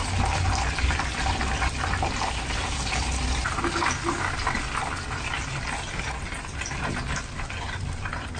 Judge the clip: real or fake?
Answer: real